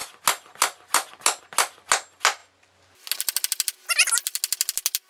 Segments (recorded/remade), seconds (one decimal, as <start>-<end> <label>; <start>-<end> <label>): 0.0-5.1 recorded